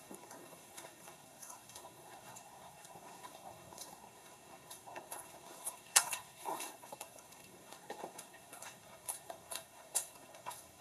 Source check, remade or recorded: remade